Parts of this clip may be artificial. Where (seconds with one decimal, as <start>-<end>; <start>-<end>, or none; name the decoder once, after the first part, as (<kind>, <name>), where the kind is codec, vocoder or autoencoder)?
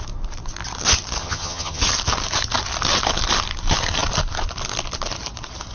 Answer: 1.2-1.8 (vocoder, HiFi-GAN)